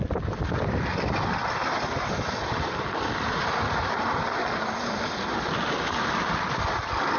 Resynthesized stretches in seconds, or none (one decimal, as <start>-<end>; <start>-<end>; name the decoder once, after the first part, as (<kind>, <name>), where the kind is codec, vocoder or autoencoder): none